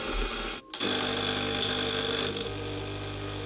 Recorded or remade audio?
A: recorded